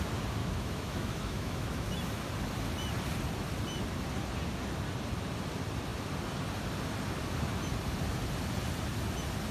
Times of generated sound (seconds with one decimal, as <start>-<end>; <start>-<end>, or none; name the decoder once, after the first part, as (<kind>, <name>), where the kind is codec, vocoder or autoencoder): 0.4-1.9 (autoencoder, DAC-VAE)

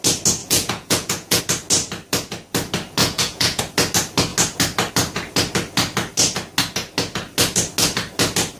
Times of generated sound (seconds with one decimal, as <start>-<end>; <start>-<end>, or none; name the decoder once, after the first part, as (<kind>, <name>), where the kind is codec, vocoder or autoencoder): 0.4-1.4 (vocoder, Vocos); 3.0-3.6

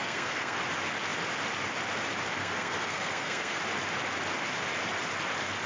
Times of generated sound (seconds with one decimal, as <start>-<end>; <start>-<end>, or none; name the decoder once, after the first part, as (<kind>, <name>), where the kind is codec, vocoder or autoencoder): 0.0-0.6 (codec, SNAC); 2.4-3.6

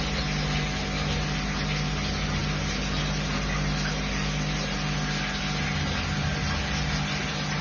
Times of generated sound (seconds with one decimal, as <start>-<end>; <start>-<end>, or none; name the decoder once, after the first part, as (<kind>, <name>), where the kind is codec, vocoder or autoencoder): none

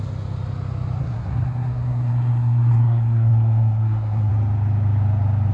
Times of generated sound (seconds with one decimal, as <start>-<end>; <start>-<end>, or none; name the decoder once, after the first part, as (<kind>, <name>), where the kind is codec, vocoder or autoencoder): 1.0-4.3 (codec, SNAC)